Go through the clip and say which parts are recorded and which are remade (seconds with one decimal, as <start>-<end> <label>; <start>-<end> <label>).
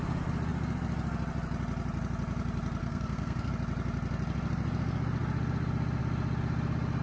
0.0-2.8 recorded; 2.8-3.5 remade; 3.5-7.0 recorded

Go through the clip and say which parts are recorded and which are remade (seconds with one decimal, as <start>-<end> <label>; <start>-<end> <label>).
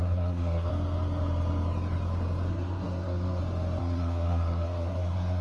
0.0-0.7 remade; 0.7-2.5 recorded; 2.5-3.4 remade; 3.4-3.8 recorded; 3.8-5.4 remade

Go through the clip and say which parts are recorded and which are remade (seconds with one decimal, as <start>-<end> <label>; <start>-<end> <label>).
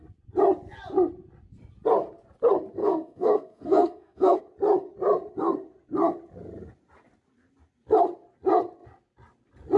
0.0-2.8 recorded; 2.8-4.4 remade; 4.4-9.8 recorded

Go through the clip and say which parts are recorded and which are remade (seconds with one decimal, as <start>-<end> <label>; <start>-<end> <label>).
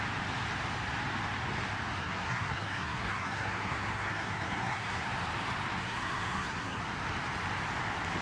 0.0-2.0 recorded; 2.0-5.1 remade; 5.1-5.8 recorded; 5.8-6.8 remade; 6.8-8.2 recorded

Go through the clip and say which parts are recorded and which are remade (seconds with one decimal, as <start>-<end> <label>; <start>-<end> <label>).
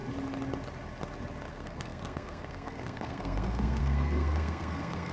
0.0-1.5 recorded; 1.5-5.1 remade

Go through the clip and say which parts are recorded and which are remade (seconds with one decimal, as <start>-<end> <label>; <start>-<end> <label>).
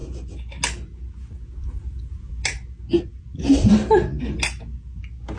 0.0-5.4 recorded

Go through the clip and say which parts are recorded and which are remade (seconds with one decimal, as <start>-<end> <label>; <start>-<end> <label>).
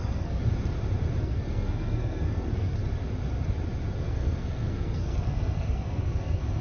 0.0-0.4 remade; 0.4-1.2 recorded; 1.2-2.8 remade; 2.8-4.0 recorded; 4.0-6.6 remade